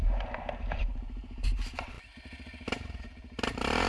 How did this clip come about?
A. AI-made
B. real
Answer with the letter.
A